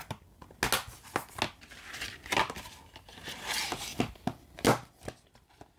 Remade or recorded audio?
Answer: recorded